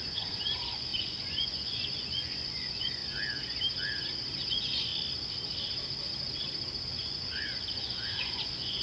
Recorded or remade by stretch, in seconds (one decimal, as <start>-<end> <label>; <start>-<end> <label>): 0.0-3.0 remade; 3.0-4.5 recorded; 4.5-4.9 remade; 4.9-6.9 recorded; 6.9-8.8 remade